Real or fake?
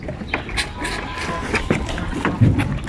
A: real